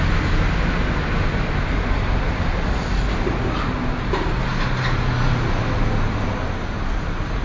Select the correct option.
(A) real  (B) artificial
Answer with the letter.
A